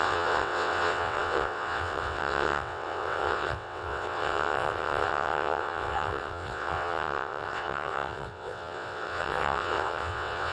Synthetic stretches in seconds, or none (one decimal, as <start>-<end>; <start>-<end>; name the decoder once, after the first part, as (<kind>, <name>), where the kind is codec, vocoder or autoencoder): 0.0-10.5 (vocoder, WaveNeXt)